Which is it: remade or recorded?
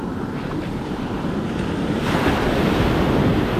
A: recorded